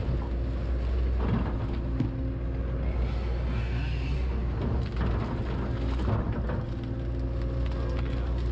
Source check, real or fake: real